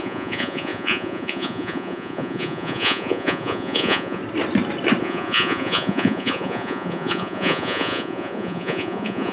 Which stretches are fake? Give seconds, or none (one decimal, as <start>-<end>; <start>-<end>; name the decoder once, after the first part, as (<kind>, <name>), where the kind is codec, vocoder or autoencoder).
0.0-4.2 (vocoder, Vocos); 5.0-9.3